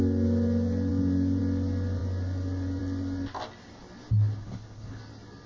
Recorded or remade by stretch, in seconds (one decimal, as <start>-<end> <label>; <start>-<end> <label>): 0.0-4.4 recorded; 4.4-5.0 remade; 5.0-5.5 recorded